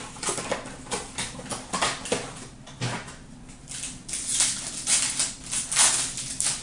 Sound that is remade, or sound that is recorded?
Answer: recorded